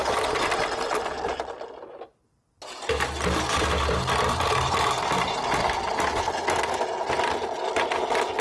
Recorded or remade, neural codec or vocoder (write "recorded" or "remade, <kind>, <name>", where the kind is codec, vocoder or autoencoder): recorded